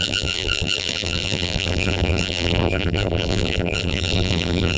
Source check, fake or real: fake